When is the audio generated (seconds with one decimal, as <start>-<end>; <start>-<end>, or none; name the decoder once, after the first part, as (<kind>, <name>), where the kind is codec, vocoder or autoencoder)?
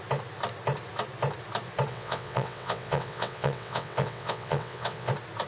1.9-5.1 (vocoder, WaveNeXt)